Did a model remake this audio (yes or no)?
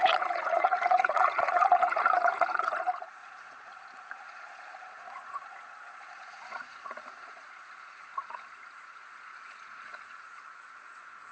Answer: yes